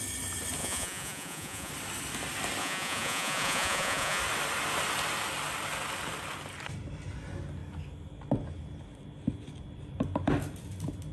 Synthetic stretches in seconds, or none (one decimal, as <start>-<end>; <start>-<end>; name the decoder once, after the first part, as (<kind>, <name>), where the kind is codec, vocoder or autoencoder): 0.6-1.7 (vocoder, Vocos); 2.6-4.2